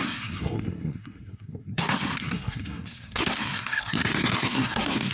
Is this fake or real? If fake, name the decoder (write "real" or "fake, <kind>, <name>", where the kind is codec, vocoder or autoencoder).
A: fake, codec, SNAC